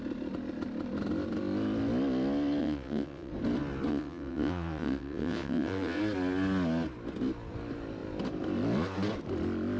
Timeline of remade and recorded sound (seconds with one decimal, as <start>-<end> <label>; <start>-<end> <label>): 0.0-2.6 recorded; 2.6-3.3 remade; 3.3-3.9 recorded; 3.9-6.0 remade; 6.0-9.8 recorded

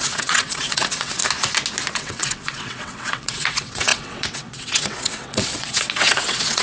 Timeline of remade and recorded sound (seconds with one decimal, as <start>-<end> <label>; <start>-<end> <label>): 0.0-1.2 remade; 1.2-1.9 recorded; 1.9-6.6 remade

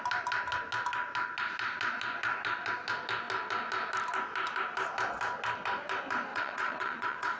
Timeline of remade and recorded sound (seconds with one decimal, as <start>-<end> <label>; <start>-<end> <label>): 0.0-6.3 recorded; 6.3-7.4 remade